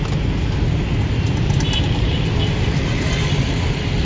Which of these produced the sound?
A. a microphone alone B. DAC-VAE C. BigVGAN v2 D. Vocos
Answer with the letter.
A